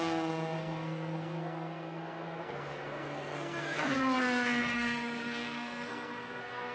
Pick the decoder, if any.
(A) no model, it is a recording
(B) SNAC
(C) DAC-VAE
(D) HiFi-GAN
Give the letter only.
B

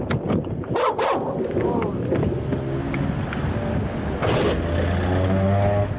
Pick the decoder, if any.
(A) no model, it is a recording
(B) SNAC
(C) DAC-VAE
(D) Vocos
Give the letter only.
A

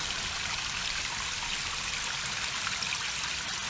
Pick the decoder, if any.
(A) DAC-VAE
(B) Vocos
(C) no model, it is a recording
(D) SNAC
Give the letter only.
C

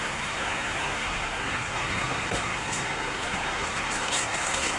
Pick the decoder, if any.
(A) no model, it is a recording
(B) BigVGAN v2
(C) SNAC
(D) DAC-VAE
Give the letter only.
C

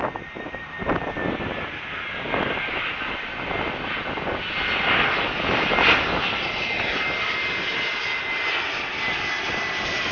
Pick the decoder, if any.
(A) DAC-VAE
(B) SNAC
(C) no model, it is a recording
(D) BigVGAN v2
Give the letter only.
C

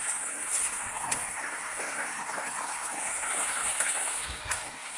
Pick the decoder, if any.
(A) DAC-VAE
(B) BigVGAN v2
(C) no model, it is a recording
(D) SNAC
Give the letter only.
D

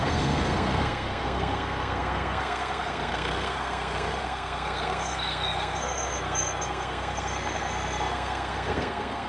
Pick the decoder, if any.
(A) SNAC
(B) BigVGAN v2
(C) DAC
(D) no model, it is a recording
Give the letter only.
A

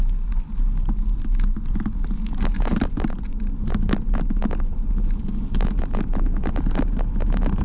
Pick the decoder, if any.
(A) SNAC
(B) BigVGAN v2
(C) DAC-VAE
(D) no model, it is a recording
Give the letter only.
D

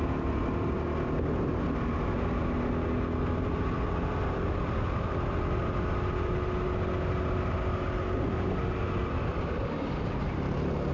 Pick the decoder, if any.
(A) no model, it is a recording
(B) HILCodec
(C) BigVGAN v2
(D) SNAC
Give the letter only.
A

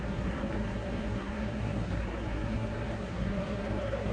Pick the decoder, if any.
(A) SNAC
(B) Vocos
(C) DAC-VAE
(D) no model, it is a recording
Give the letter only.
A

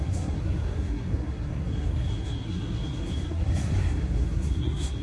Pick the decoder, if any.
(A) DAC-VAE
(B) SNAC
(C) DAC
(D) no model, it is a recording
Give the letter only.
B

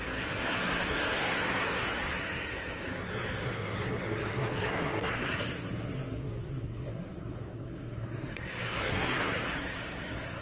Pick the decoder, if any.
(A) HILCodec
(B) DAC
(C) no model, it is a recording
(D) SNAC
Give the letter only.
D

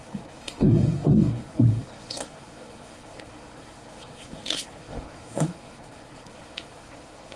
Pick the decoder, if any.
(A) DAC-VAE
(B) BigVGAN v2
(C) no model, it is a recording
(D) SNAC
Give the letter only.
D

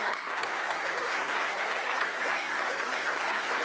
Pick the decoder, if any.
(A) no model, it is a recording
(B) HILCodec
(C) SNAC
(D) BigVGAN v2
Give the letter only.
C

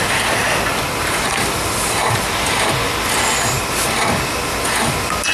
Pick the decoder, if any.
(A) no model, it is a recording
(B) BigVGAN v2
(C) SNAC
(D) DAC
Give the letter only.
A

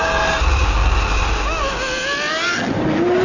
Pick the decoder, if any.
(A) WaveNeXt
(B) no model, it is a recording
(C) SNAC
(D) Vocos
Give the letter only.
B